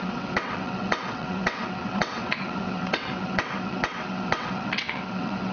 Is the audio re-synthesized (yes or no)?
yes